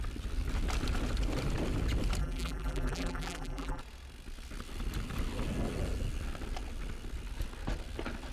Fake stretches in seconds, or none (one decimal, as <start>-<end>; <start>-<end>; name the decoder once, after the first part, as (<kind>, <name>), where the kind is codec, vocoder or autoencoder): 2.2-3.8 (vocoder, BigVGAN v2)